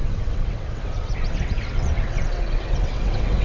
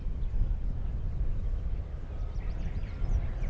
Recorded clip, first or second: second